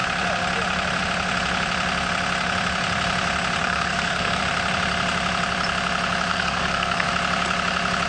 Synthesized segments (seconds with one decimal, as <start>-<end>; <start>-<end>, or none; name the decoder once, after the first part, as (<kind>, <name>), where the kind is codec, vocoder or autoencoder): 3.6-4.4 (codec, SNAC); 6.3-7.1